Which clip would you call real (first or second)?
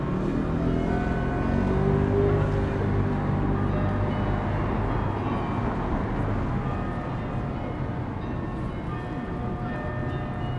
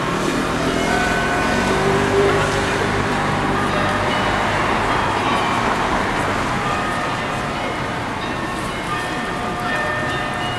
first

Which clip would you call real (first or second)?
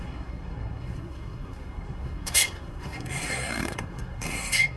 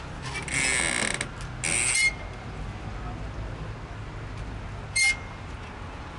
second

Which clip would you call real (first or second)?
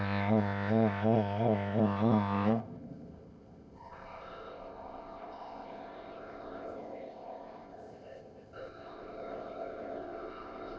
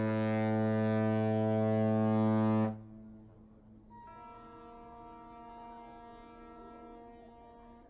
second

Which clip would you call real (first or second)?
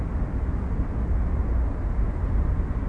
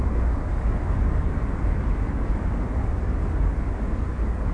first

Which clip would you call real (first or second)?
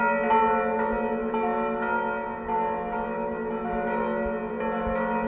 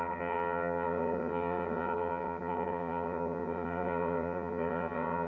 first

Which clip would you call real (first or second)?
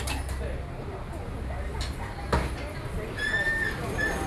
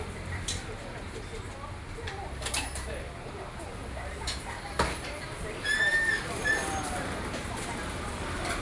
first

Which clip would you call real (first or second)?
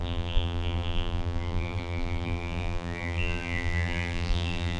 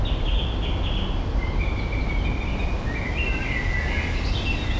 second